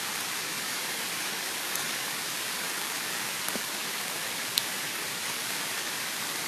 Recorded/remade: remade